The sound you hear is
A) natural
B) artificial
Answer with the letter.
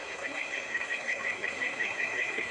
B